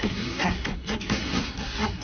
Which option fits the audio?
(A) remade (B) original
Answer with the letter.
A